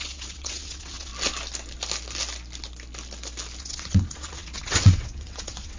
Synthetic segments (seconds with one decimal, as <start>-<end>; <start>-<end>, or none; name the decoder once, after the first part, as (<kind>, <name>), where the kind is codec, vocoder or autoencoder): 0.0-1.1 (vocoder, WaveNeXt); 3.6-5.8